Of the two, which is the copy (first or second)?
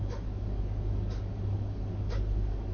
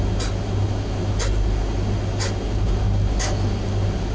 first